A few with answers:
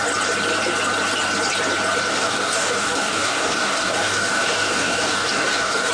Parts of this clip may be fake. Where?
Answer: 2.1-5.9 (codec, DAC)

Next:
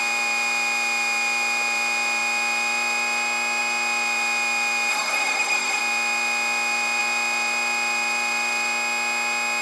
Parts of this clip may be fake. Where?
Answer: 4.9-5.8 (codec, SNAC)